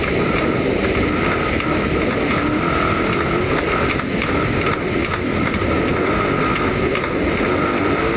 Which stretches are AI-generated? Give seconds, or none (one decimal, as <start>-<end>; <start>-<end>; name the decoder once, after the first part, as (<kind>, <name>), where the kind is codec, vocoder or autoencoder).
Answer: none